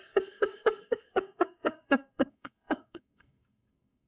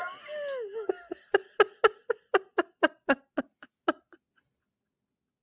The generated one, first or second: first